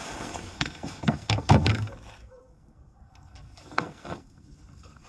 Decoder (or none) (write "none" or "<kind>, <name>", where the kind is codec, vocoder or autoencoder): codec, SNAC